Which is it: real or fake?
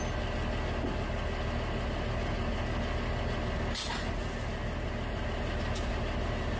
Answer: real